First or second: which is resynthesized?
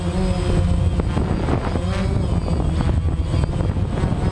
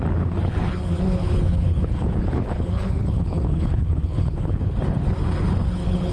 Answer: second